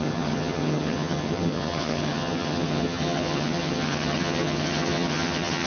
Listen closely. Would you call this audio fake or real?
fake